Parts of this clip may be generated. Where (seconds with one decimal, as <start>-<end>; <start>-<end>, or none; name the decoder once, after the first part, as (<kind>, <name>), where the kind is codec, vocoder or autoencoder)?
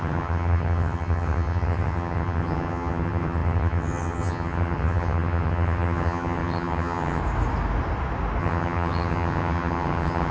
0.0-7.2 (vocoder, HiFi-GAN); 8.4-10.3